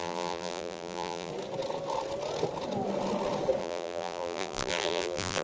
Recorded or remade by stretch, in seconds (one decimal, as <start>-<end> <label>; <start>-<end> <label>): 0.0-1.3 remade; 1.3-3.6 recorded; 3.6-5.4 remade